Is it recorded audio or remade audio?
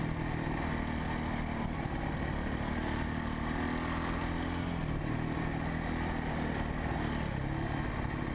recorded